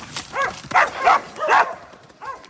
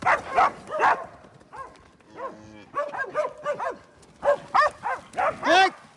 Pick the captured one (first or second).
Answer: second